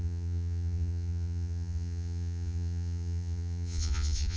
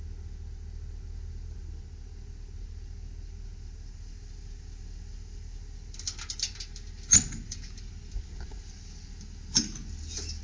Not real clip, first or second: first